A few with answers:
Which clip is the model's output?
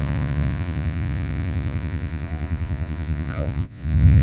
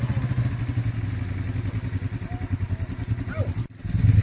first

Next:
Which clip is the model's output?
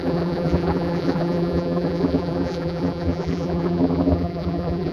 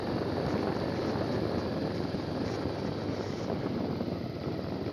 first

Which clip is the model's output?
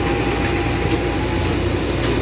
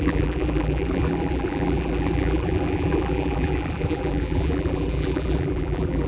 second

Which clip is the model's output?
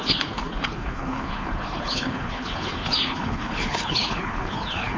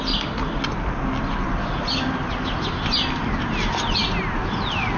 first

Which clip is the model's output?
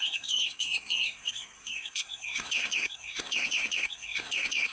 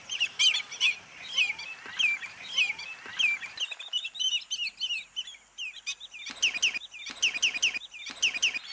first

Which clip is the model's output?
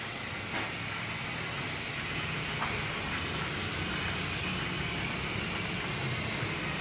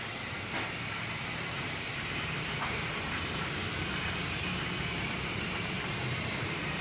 second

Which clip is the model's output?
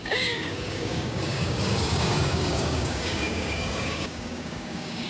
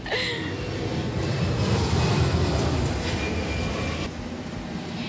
first